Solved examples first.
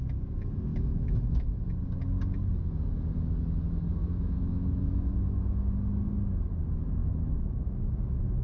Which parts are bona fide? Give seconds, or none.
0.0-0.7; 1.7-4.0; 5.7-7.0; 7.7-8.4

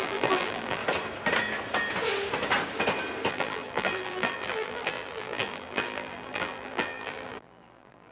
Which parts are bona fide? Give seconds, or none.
0.8-3.3

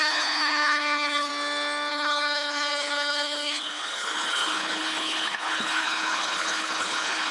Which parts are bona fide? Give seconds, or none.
1.3-1.9

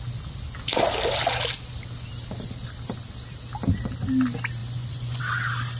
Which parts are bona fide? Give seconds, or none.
0.0-4.6; 5.2-5.8

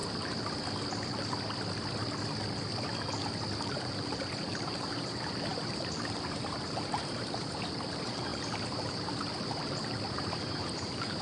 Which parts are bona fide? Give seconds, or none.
0.0-3.7

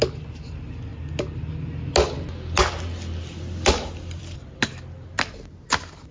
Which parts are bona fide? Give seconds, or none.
0.0-6.1